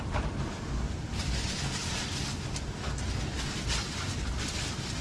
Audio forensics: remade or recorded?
recorded